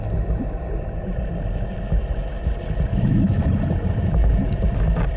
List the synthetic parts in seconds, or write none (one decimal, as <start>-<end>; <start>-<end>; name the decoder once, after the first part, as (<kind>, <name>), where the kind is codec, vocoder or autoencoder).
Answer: 2.9-3.4 (autoencoder, DAC-VAE)